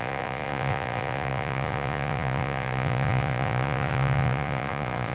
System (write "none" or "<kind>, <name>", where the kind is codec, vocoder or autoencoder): vocoder, Vocos